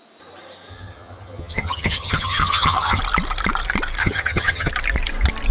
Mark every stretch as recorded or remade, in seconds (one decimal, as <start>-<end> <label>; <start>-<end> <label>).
0.0-0.7 recorded; 0.7-3.0 remade; 3.0-4.0 recorded; 4.0-4.7 remade; 4.7-5.5 recorded